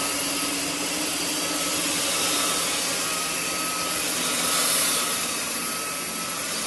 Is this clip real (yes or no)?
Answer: yes